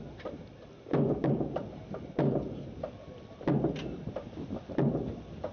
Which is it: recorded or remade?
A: recorded